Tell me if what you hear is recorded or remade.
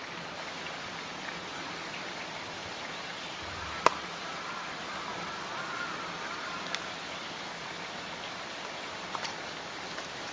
recorded